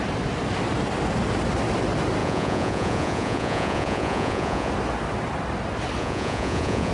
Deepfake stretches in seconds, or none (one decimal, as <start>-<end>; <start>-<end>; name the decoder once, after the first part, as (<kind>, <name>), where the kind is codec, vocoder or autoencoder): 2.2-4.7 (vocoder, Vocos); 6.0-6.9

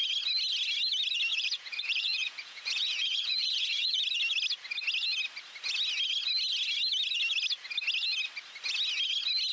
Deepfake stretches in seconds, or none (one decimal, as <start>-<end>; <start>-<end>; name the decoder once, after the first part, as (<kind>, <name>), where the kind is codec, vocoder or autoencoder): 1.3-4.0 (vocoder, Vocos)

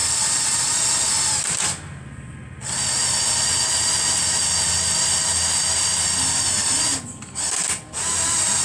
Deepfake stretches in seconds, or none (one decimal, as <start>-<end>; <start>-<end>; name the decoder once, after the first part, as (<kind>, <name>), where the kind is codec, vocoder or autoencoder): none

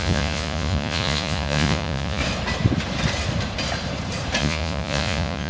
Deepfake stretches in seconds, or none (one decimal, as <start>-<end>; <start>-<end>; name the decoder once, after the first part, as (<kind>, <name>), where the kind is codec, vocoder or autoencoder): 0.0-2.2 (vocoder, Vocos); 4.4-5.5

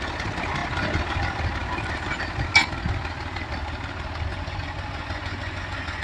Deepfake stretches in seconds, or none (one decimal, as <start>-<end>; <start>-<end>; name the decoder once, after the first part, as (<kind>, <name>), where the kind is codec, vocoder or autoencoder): 4.3-6.0 (vocoder, Vocos)